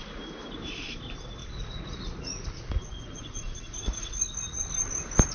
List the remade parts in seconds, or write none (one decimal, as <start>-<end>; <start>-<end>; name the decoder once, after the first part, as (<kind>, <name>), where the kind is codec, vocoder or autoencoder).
1.4-4.6 (vocoder, Vocos)